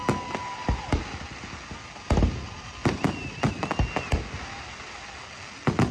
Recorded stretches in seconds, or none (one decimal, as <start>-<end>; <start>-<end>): 0.0-5.9